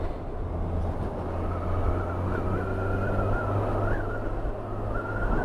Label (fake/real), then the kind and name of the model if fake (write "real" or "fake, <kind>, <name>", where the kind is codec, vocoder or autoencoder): real